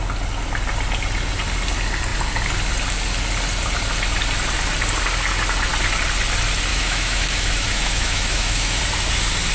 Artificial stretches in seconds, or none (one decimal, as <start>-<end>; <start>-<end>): 6.7-8.8